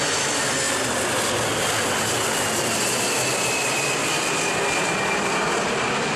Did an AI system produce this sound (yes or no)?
no